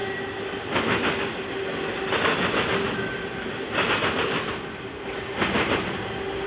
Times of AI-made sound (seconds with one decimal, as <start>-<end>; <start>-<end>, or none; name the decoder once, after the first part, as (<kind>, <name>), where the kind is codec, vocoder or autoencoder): none